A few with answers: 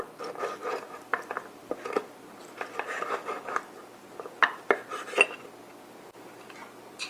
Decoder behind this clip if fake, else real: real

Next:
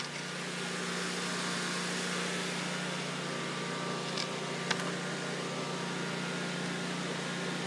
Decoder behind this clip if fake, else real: real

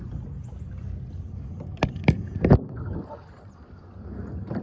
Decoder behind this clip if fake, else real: fake, vocoder, BigVGAN v2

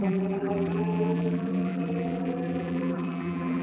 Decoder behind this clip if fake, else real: fake, vocoder, BigVGAN v2